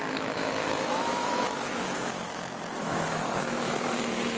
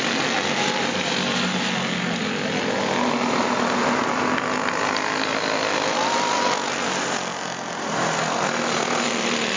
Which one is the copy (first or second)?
first